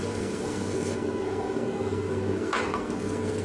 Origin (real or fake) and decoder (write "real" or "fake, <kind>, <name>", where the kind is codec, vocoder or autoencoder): fake, codec, SNAC